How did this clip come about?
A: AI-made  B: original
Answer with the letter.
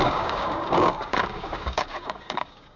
A